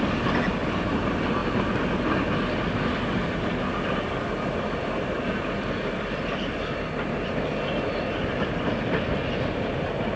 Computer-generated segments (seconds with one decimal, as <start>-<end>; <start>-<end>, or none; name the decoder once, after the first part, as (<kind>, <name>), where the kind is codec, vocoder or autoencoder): none